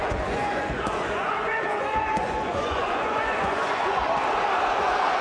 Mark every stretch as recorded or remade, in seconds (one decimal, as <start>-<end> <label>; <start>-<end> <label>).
0.0-4.0 remade; 4.0-4.7 recorded; 4.7-5.2 remade